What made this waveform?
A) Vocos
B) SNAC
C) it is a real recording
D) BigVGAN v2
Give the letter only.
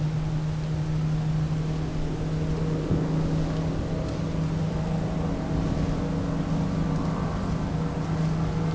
C